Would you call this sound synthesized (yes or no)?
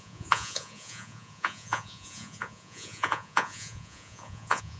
yes